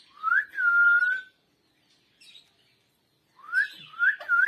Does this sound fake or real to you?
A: real